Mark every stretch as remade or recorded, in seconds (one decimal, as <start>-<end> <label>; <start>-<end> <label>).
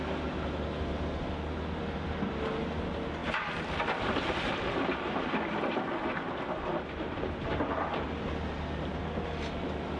0.0-3.2 recorded; 3.2-4.0 remade; 4.0-6.7 recorded; 6.7-8.1 remade; 8.1-10.0 recorded